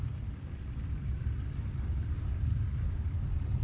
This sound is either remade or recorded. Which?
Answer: recorded